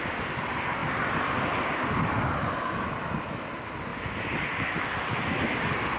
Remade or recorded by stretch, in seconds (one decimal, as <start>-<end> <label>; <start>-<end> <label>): 0.0-6.0 recorded